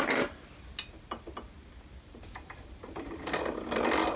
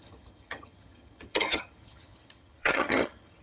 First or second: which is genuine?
first